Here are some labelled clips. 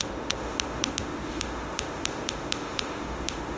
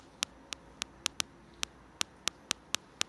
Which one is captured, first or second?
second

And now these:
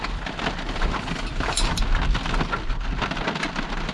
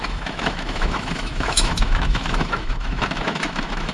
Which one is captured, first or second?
first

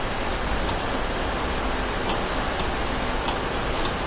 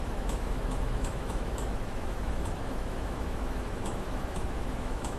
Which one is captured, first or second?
first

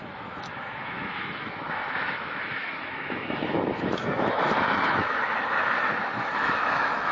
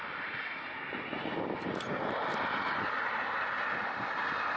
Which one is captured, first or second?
second